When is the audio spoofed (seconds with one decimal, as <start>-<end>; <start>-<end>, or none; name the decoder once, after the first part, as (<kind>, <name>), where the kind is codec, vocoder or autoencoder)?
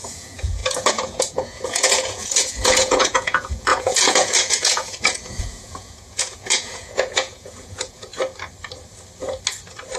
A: 0.0-8.1 (vocoder, Vocos)